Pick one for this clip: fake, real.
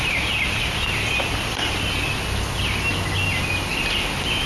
real